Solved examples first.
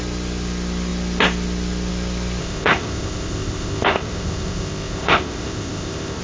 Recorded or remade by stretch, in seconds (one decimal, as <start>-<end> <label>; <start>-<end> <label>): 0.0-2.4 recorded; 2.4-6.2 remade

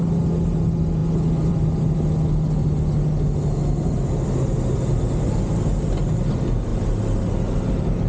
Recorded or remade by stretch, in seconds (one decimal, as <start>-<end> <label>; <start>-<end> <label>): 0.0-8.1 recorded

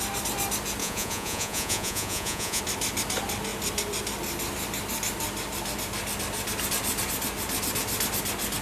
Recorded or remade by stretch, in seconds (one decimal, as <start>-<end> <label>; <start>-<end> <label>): 0.0-0.8 recorded; 0.8-2.6 remade; 2.6-8.6 recorded